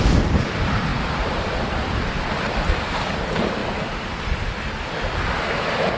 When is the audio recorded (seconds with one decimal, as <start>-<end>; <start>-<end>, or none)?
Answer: 3.6-5.5